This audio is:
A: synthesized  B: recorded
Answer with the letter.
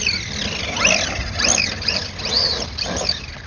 B